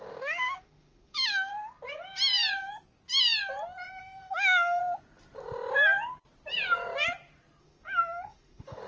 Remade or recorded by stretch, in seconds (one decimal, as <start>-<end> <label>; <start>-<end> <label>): 0.0-1.5 remade; 1.5-4.0 recorded; 4.0-4.8 remade; 4.8-7.6 recorded; 7.6-8.9 remade